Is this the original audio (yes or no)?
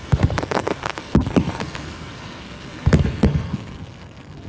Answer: no